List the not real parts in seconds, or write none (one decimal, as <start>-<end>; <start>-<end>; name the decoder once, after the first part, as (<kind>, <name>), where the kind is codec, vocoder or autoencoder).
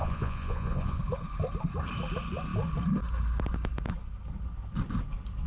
0.0-1.0 (vocoder, Vocos)